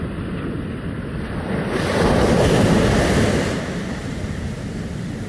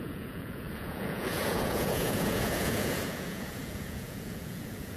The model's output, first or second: second